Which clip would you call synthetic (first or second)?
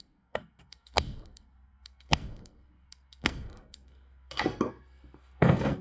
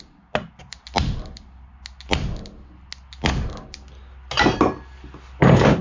first